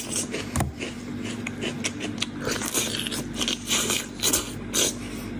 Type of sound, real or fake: real